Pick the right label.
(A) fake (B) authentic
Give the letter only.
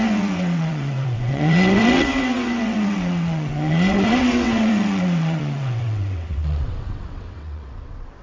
A